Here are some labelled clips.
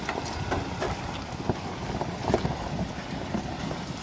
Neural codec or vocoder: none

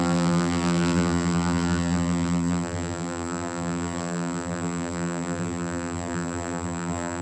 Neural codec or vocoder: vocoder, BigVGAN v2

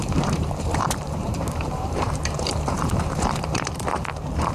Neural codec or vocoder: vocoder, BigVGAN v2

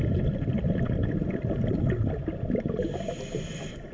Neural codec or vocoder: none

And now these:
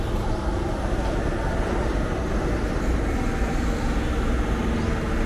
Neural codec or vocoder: none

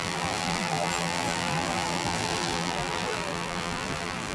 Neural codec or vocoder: vocoder, BigVGAN v2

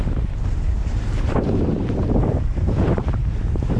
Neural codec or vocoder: vocoder, BigVGAN v2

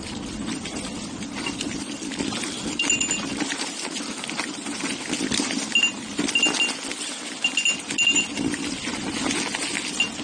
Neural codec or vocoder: none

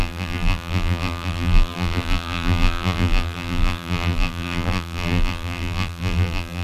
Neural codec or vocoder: vocoder, BigVGAN v2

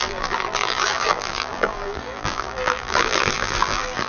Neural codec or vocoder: vocoder, BigVGAN v2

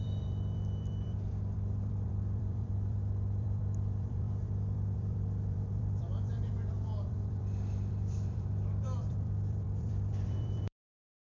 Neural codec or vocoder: vocoder, BigVGAN v2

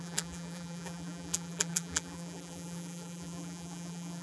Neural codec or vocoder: vocoder, BigVGAN v2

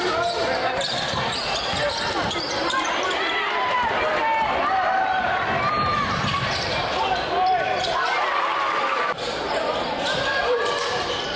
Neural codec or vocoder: vocoder, BigVGAN v2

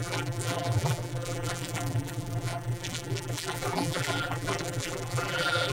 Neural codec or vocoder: vocoder, BigVGAN v2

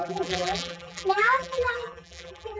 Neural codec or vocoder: vocoder, BigVGAN v2